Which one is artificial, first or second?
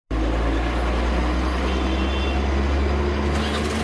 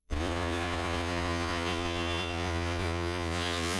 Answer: second